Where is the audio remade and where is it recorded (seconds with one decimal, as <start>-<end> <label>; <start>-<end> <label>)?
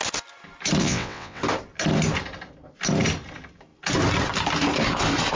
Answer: 0.0-0.8 recorded; 0.8-1.4 remade; 1.4-5.3 recorded